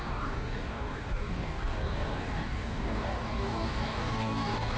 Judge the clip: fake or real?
fake